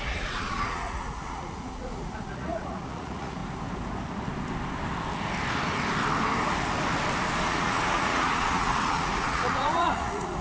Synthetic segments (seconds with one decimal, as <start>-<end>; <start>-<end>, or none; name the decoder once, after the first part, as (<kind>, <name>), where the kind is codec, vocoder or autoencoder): 0.0-3.4 (vocoder, Vocos); 7.5-10.4